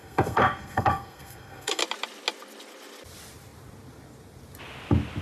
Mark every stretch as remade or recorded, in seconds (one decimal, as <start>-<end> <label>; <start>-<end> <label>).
0.0-1.8 remade; 1.8-5.2 recorded